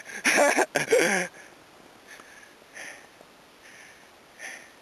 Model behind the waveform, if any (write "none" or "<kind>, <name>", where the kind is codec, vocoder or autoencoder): none